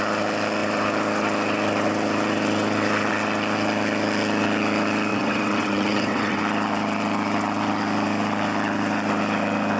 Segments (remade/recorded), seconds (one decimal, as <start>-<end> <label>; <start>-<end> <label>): 0.0-5.1 recorded; 5.1-6.4 remade; 6.4-9.8 recorded